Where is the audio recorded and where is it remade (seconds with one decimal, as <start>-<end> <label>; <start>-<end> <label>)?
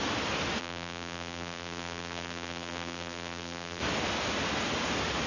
0.0-0.6 recorded; 0.6-3.8 remade; 3.8-5.3 recorded